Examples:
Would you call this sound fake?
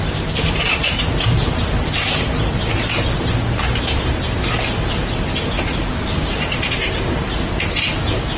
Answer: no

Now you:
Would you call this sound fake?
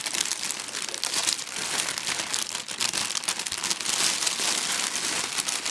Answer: yes